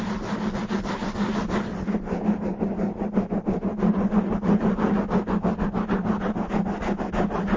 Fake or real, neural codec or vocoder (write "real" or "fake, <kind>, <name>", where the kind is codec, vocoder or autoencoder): real